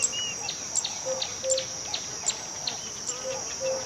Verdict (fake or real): real